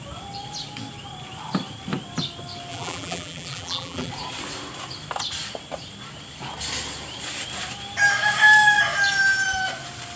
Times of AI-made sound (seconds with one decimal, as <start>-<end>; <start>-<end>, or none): 2.7-4.1